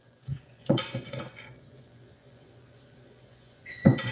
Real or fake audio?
fake